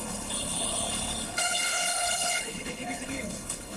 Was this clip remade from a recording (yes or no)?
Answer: yes